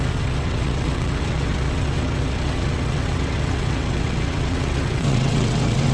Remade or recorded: remade